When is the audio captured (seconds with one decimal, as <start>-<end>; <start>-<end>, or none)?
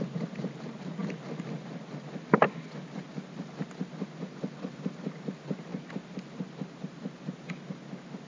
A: 0.0-8.3